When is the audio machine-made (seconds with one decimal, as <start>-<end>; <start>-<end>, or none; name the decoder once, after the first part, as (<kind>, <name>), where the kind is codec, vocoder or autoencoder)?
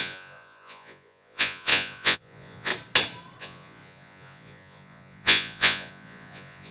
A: 0.0-2.7 (vocoder, Vocos); 3.4-6.7